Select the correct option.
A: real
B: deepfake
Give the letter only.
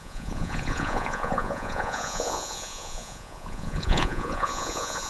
B